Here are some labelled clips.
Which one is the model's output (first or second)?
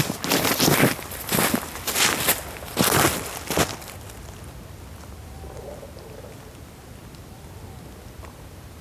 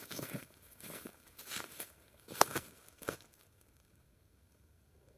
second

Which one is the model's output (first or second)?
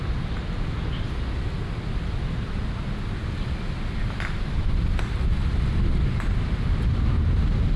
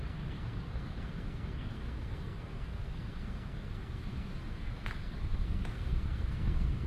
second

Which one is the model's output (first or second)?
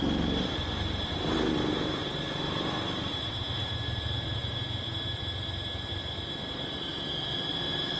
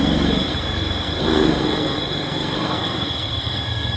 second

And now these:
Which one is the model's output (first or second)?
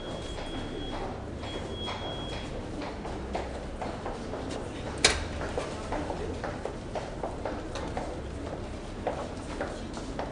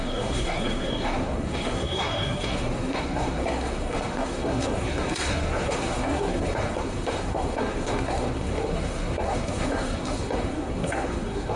second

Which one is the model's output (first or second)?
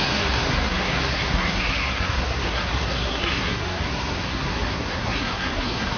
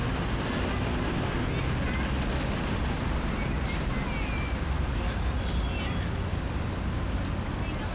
first